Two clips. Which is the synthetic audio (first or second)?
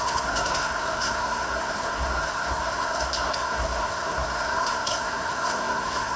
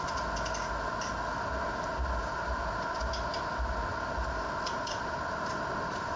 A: first